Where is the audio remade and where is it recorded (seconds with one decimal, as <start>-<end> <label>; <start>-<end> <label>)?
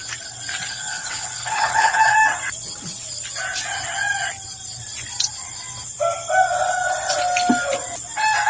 0.0-0.7 recorded; 0.7-2.0 remade; 2.0-8.5 recorded